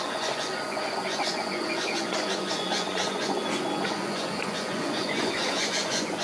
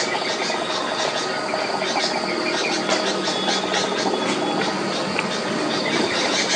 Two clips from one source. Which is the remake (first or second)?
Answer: first